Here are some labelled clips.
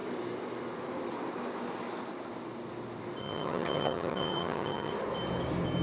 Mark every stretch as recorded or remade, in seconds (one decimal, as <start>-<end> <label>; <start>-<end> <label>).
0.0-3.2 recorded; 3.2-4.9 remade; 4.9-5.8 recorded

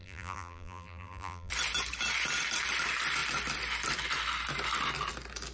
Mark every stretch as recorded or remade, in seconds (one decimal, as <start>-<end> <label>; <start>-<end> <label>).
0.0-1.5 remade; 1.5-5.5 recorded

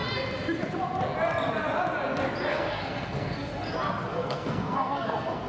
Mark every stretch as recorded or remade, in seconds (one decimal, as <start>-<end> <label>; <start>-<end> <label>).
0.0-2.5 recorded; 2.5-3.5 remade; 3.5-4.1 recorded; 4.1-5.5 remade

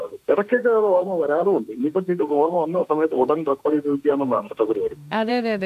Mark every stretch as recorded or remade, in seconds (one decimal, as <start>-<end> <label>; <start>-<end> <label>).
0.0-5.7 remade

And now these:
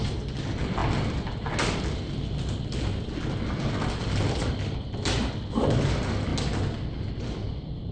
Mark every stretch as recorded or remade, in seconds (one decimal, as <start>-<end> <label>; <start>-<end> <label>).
0.0-7.9 recorded

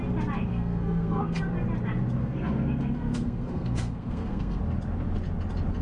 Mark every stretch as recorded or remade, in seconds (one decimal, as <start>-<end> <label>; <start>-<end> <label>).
0.0-0.5 recorded; 0.5-1.4 remade; 1.4-2.2 recorded; 2.2-4.6 remade; 4.6-5.8 recorded

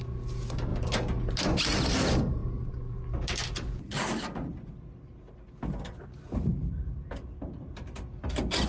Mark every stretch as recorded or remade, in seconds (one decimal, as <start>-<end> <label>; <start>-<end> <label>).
0.0-8.7 recorded